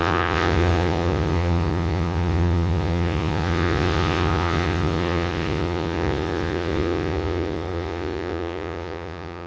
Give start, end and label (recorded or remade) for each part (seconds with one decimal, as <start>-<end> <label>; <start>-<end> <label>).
0.0-9.5 remade